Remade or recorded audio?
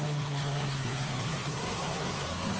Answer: remade